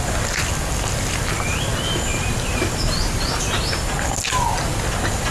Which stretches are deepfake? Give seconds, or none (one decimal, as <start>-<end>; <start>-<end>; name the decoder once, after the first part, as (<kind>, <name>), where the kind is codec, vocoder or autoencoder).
2.1-3.3 (vocoder, BigVGAN v2)